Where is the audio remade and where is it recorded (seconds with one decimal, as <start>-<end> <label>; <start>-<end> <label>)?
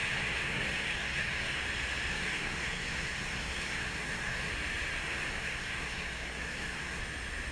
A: 0.0-1.6 remade; 1.6-2.1 recorded; 2.1-4.5 remade; 4.5-5.0 recorded; 5.0-7.0 remade; 7.0-7.5 recorded